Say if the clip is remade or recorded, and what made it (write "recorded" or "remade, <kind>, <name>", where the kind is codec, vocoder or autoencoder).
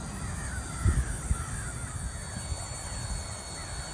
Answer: recorded